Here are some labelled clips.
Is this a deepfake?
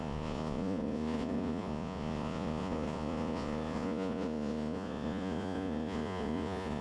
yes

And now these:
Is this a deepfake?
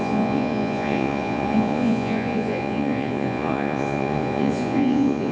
yes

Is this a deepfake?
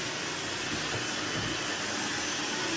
no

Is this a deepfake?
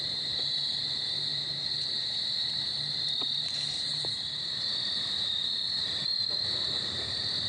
yes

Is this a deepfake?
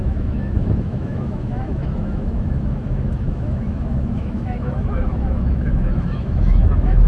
yes